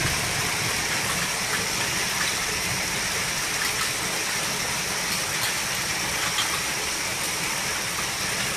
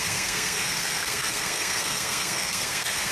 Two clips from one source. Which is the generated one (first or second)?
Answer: second